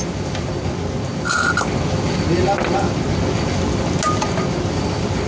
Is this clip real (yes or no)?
yes